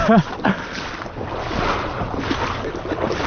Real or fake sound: real